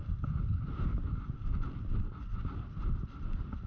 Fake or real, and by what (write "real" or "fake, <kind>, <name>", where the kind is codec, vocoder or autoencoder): real